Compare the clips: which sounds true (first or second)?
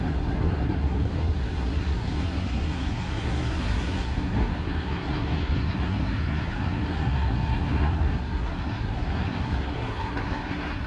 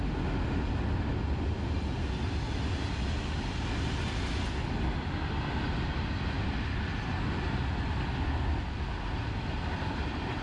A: second